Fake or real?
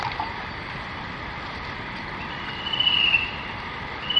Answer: real